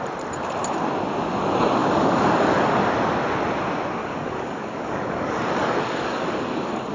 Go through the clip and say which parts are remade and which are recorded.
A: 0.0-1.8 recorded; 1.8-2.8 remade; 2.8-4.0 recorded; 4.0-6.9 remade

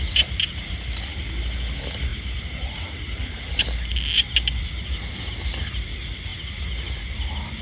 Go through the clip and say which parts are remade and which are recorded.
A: 0.0-7.6 recorded

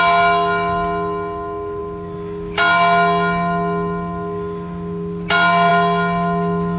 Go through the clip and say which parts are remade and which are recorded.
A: 0.0-6.8 recorded

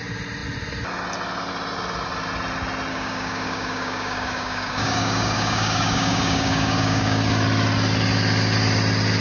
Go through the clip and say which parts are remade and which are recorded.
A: 0.0-2.9 recorded; 2.9-7.2 remade; 7.2-9.2 recorded